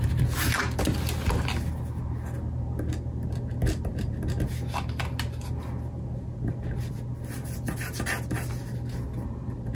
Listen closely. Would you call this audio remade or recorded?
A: recorded